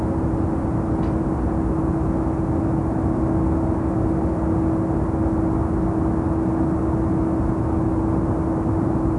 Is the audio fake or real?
real